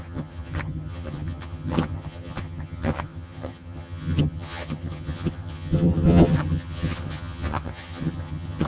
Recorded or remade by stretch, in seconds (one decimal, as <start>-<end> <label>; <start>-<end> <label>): 0.0-8.7 remade